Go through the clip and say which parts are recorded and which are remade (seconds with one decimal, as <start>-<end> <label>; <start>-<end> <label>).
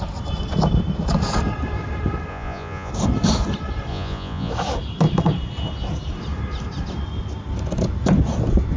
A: 0.0-2.3 recorded; 2.3-2.9 remade; 2.9-3.9 recorded; 3.9-4.5 remade; 4.5-8.8 recorded